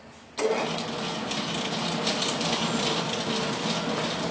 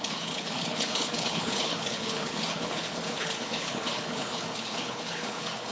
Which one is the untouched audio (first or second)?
first